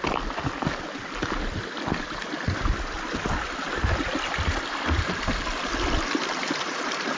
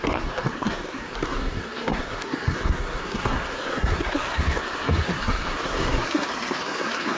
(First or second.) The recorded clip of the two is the first